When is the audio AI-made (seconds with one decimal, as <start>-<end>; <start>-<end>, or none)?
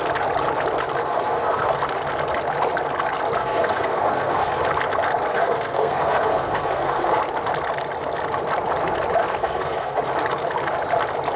1.0-1.8; 3.4-4.6; 5.3-7.2; 9.2-10.0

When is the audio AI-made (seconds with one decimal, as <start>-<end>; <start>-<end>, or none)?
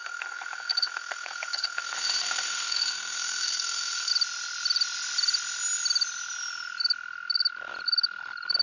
0.0-4.1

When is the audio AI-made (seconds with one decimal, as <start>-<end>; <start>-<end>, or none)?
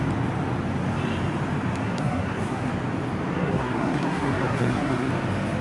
1.8-2.7; 3.3-5.1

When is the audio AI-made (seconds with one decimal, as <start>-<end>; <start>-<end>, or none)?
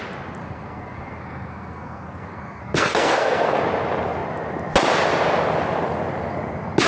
0.4-3.6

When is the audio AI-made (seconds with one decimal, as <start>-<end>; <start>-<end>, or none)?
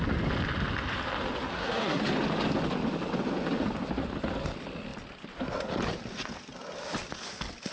1.5-2.0